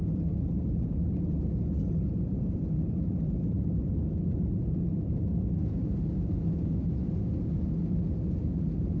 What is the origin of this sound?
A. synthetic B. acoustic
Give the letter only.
B